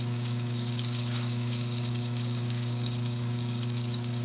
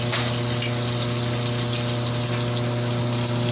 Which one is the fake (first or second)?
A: first